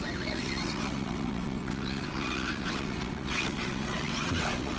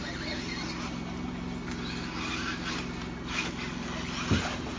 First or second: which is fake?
first